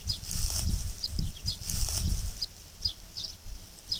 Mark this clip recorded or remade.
remade